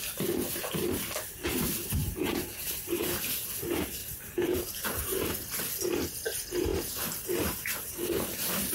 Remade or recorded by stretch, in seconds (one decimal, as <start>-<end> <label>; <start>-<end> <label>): 0.0-2.0 recorded; 2.0-3.2 remade; 3.2-4.0 recorded; 4.0-5.6 remade; 5.6-8.7 recorded